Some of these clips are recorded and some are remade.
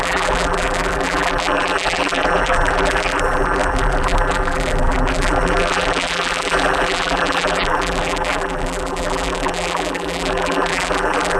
remade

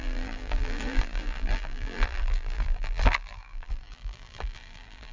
remade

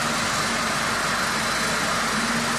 recorded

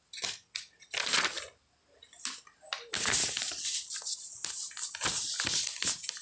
recorded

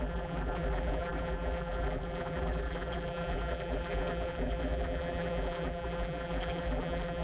remade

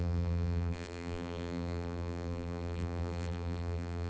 remade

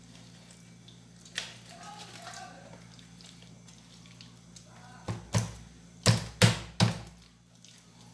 recorded